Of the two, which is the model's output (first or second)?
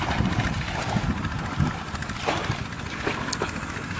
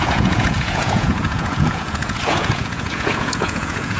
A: second